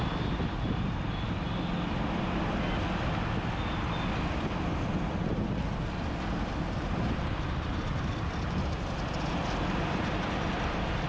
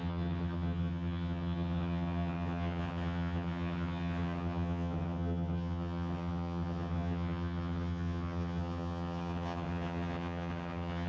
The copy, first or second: second